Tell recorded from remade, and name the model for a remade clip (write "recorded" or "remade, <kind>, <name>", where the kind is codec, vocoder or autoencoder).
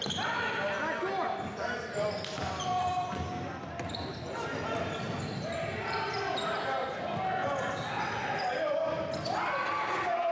recorded